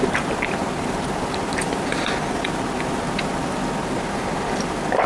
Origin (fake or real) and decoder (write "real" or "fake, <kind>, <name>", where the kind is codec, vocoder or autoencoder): real